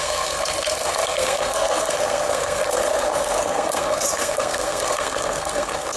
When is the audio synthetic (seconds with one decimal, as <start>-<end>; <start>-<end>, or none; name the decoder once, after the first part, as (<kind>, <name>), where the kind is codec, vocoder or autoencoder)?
0.0-6.0 (codec, SNAC)